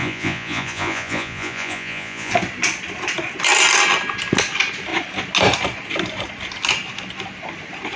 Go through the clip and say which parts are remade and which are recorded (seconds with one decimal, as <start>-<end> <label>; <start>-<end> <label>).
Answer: 0.0-2.3 remade; 2.3-8.0 recorded